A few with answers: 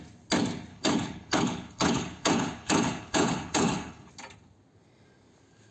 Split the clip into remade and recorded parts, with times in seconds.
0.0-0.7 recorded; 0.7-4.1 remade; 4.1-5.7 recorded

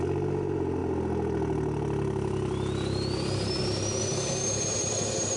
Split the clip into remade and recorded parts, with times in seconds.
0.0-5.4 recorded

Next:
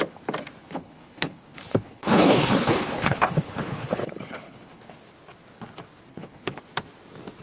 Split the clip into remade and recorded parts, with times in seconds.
0.0-0.6 recorded; 0.6-5.0 remade; 5.0-6.1 recorded; 6.1-6.6 remade; 6.6-7.4 recorded

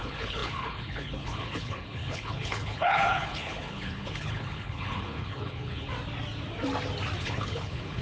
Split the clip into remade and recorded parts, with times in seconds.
0.0-5.9 remade; 5.9-7.2 recorded; 7.2-8.0 remade